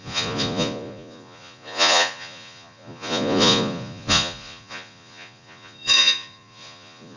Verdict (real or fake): fake